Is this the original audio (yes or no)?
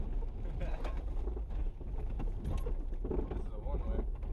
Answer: yes